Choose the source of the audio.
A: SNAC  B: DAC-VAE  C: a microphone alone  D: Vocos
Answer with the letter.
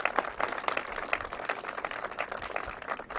C